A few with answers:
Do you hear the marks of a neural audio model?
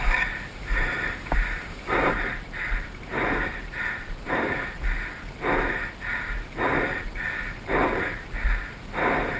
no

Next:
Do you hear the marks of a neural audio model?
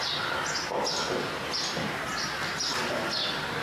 no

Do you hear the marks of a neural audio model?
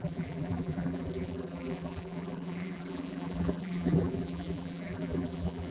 yes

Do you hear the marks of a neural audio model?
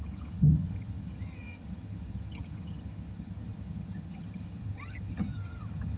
yes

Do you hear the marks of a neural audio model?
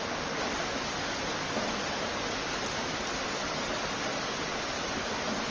no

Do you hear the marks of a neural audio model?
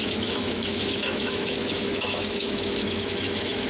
yes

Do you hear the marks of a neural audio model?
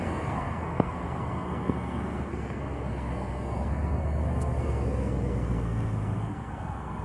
yes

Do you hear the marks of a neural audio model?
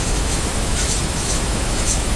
yes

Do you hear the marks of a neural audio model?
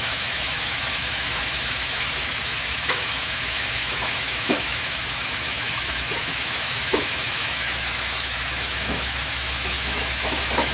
yes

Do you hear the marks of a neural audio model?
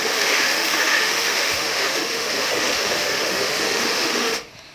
yes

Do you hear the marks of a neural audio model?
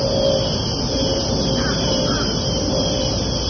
yes